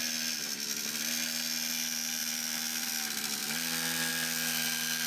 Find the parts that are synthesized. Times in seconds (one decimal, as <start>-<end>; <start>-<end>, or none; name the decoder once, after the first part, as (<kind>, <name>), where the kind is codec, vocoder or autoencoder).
2.2-2.9 (vocoder, BigVGAN v2)